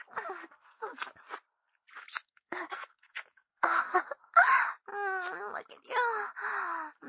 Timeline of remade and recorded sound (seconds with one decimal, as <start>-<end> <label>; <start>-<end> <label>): 0.0-0.4 recorded; 0.4-1.1 remade; 1.1-2.1 recorded; 2.1-4.2 remade; 4.2-7.1 recorded

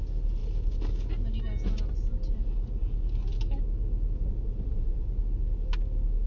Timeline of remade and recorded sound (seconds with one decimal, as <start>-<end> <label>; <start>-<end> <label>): 0.0-6.3 recorded

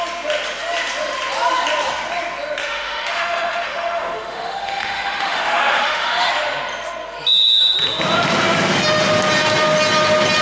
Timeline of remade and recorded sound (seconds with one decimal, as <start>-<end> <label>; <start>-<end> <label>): 0.0-2.6 recorded; 2.6-6.3 remade; 6.3-10.4 recorded

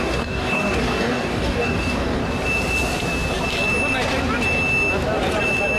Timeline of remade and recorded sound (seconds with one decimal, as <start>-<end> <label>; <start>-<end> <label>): 0.0-2.2 remade; 2.2-5.8 recorded

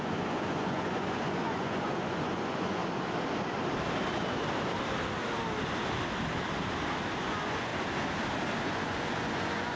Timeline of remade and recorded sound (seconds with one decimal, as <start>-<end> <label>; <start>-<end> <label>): 0.0-2.8 remade; 2.8-7.2 recorded; 7.2-7.7 remade; 7.7-8.6 recorded; 8.6-9.8 remade

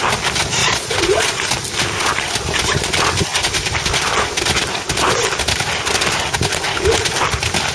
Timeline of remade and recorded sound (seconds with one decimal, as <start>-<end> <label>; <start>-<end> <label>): 0.0-0.6 recorded; 0.6-1.4 remade; 1.4-7.7 recorded

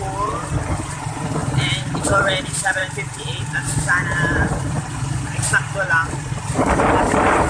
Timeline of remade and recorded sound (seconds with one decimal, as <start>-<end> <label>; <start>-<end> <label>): 0.0-1.4 remade; 1.4-2.0 recorded; 2.0-2.8 remade; 2.8-6.1 recorded; 6.1-7.5 remade

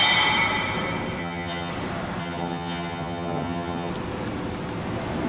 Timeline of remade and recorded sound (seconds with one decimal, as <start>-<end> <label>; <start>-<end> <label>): 0.0-1.2 recorded; 1.2-1.7 remade; 1.7-2.2 recorded; 2.2-3.9 remade; 3.9-5.3 recorded